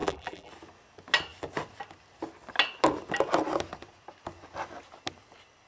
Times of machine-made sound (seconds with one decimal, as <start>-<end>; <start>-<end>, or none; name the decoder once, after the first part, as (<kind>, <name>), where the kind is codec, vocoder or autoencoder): 0.0-0.5 (vocoder, BigVGAN v2)

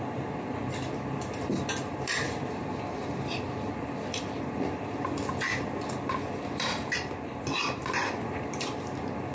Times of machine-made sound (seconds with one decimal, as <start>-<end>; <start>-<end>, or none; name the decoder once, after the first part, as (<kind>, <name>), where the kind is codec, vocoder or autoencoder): 0.0-5.5 (vocoder, BigVGAN v2); 6.1-9.3

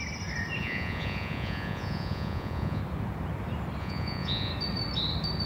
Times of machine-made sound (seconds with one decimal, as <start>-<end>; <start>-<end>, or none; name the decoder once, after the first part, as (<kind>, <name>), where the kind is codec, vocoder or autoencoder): 0.6-2.8 (vocoder, Vocos); 3.8-4.5

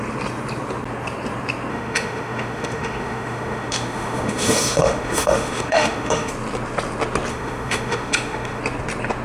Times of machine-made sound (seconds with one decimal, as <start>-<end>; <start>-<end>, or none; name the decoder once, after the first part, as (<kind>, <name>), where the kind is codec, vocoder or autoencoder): 1.7-6.3 (autoencoder, DAC-VAE); 7.3-8.6

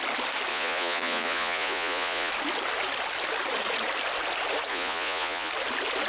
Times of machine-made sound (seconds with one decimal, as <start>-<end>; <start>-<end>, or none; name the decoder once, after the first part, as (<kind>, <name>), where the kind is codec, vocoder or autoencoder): 0.5-2.3 (vocoder, Vocos); 4.7-5.5

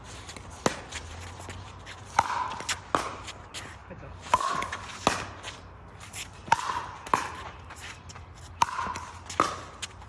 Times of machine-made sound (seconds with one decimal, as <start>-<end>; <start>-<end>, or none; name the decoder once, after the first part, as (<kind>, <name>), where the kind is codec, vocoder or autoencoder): 3.8-4.8 (codec, DAC)

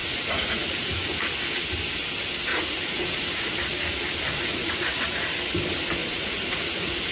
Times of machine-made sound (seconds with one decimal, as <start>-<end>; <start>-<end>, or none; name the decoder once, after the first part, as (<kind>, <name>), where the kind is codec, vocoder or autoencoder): 0.0-0.6 (vocoder, Vocos); 2.5-3.5; 4.5-5.3; 6.0-7.1